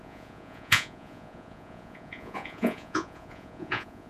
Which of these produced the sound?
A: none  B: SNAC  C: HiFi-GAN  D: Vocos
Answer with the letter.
D